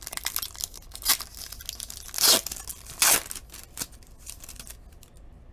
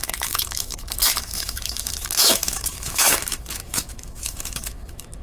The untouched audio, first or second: first